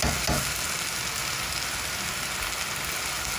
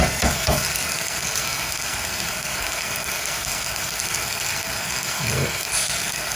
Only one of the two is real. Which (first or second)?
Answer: first